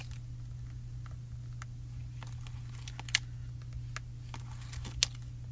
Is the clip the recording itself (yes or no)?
yes